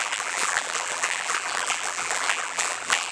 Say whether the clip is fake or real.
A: fake